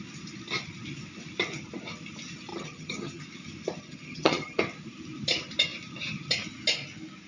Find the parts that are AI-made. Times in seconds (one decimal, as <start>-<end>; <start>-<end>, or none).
2.5-3.2; 3.8-4.6